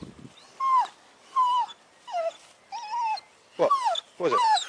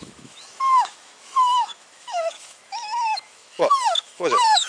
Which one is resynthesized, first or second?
second